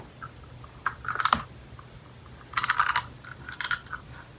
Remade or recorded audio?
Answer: recorded